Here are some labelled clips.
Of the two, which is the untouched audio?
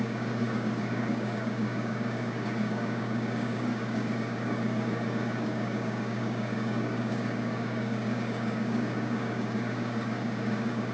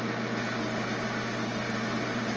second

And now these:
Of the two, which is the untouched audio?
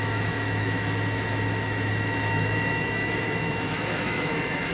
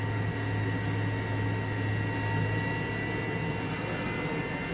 second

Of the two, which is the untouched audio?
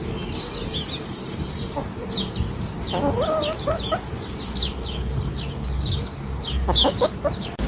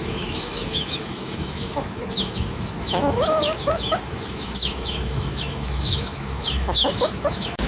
first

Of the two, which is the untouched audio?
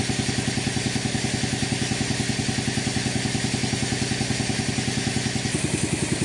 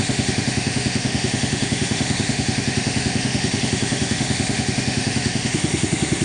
first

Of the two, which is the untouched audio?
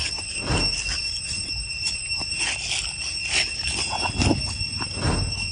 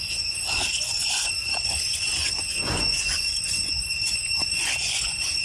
first